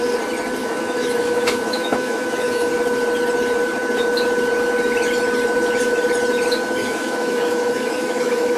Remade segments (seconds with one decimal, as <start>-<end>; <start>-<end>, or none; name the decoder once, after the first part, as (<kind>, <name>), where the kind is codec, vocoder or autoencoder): 0.6-2.7 (autoencoder, DAC-VAE); 6.8-8.6